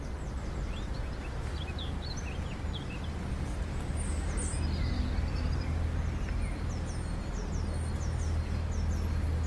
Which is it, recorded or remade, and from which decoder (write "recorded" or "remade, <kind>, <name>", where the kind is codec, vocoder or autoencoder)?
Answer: recorded